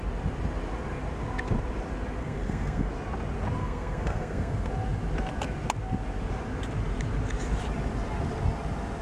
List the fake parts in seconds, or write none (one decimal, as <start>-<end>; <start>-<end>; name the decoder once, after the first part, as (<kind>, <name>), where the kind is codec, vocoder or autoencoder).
2.2-2.9 (codec, SNAC); 3.6-4.7